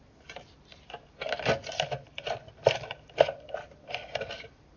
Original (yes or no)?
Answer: yes